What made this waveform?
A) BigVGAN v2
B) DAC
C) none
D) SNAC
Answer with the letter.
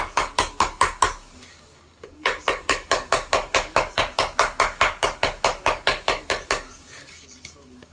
B